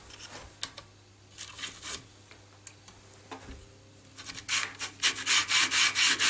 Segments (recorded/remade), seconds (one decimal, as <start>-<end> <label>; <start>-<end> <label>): 0.0-6.3 recorded